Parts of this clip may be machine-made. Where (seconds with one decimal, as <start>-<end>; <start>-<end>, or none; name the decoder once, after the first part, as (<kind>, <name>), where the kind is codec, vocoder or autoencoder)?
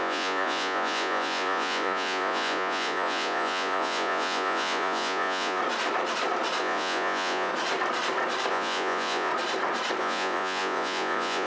0.0-5.6 (vocoder, Vocos); 6.6-7.5; 8.5-9.3; 10.0-11.5